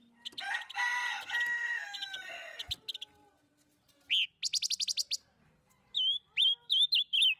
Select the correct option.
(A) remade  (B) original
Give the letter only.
B